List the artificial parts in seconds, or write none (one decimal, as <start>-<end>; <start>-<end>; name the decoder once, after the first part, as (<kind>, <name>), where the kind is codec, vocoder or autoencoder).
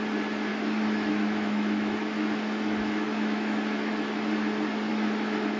0.5-3.9 (autoencoder, DAC-VAE); 4.9-5.6